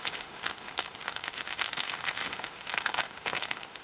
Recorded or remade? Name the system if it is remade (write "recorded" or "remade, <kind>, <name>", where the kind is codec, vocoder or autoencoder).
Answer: remade, autoencoder, DAC-VAE